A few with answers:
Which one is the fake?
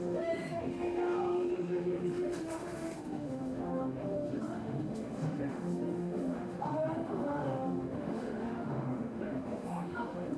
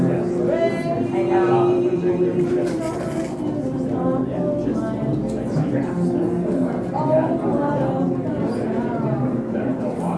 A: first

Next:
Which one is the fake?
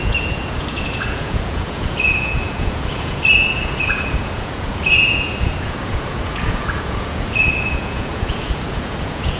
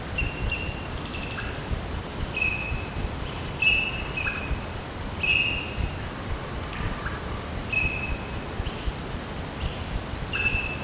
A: first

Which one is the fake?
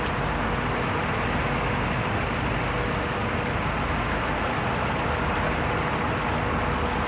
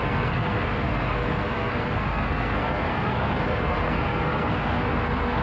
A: second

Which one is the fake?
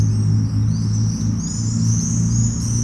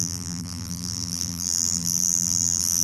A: second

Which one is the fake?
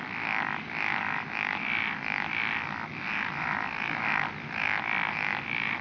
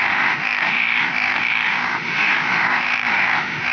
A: second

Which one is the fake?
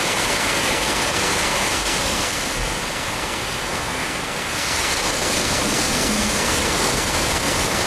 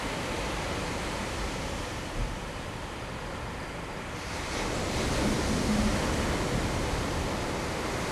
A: first